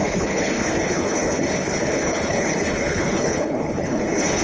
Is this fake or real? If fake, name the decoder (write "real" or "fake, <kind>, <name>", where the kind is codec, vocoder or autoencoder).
fake, codec, HILCodec